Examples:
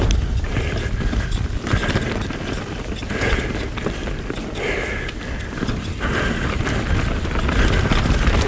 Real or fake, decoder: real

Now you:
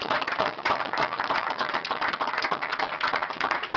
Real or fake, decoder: fake, vocoder, Vocos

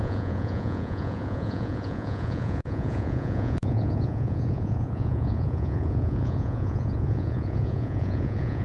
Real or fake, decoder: fake, vocoder, Vocos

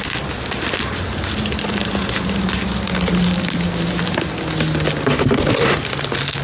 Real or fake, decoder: real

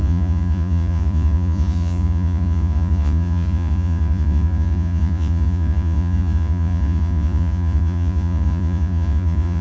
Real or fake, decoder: fake, vocoder, Vocos